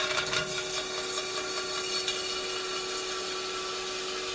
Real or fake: real